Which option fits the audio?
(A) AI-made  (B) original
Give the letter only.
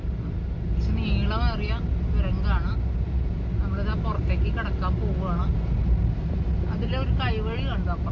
B